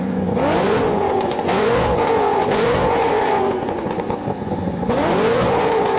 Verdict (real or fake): fake